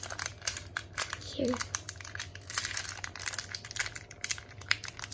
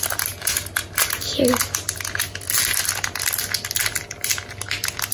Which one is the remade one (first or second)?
first